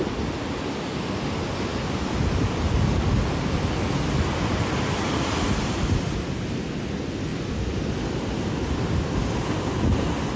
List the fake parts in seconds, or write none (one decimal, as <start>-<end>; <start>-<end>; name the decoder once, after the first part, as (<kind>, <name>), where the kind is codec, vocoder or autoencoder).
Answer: none